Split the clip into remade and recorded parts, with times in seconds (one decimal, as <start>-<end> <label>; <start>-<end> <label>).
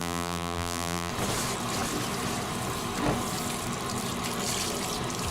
0.0-1.1 remade; 1.1-5.3 recorded